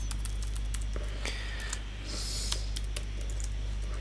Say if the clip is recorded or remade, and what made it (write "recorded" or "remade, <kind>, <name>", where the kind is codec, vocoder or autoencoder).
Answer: recorded